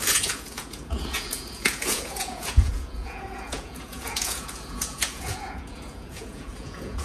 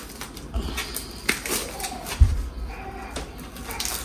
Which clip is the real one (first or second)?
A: second